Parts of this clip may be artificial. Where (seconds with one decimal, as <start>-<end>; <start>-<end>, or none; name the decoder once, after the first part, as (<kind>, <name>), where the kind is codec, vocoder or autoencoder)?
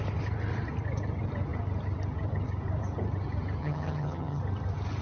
3.6-4.4 (vocoder, HiFi-GAN)